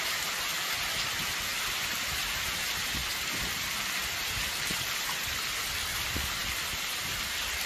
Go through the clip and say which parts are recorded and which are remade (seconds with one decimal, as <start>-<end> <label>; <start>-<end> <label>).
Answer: 0.0-1.5 recorded; 1.5-2.5 remade; 2.5-3.0 recorded; 3.0-3.7 remade; 3.7-7.7 recorded